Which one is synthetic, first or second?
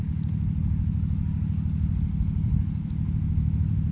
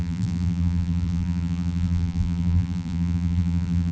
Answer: second